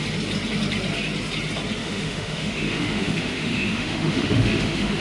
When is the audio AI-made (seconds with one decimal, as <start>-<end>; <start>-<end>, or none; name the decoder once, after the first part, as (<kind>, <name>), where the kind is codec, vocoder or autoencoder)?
1.8-5.0 (autoencoder, DAC-VAE)